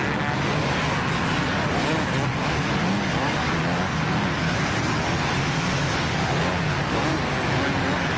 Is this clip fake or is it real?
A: real